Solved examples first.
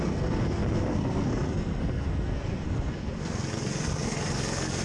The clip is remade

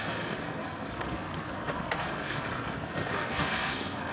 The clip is remade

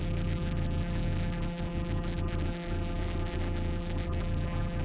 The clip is remade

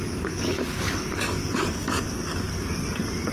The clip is remade